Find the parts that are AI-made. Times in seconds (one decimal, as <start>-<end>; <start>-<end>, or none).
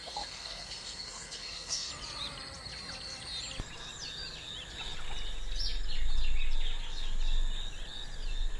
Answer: 0.0-1.9